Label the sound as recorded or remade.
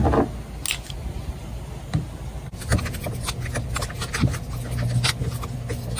recorded